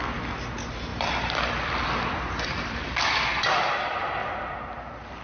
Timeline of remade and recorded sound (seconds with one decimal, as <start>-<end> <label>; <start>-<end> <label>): 0.0-0.9 recorded; 0.9-4.0 remade; 4.0-5.2 recorded